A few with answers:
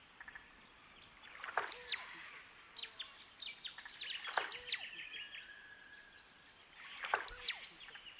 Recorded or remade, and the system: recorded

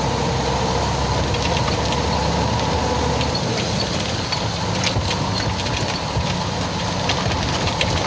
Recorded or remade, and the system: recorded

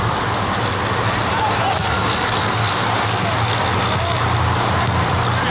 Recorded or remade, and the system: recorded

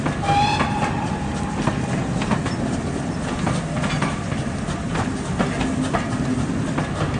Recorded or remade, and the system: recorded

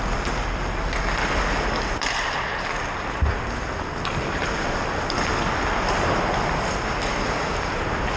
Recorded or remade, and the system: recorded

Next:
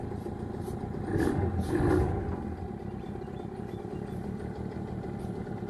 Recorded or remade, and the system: recorded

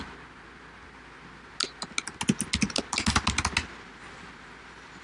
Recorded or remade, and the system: recorded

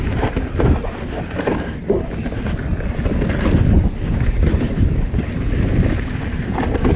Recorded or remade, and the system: recorded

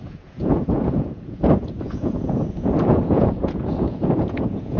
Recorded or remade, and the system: remade, vocoder, Vocos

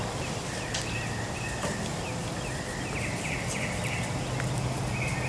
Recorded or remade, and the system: recorded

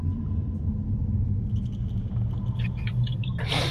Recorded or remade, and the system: recorded